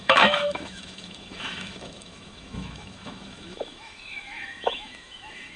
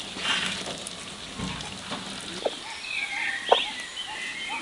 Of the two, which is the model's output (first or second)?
first